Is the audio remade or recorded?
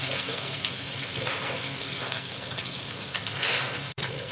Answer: remade